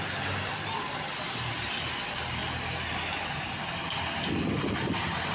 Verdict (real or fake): real